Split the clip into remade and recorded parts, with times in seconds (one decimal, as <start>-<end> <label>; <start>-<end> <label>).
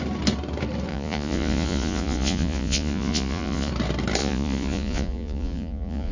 0.0-0.9 recorded; 0.9-3.7 remade; 3.7-4.2 recorded; 4.2-6.1 remade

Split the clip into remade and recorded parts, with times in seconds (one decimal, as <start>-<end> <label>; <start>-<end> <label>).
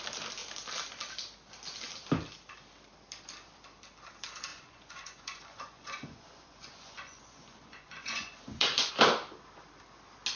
0.0-4.5 recorded; 4.5-8.9 remade; 8.9-10.4 recorded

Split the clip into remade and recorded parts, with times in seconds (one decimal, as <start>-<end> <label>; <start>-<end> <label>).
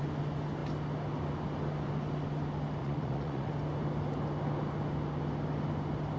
0.0-2.8 recorded; 2.8-3.5 remade; 3.5-6.2 recorded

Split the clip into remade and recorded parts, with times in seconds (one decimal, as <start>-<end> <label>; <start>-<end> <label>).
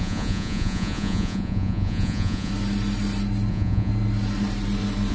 0.0-2.5 remade; 2.5-3.5 recorded; 3.5-3.9 remade; 3.9-5.1 recorded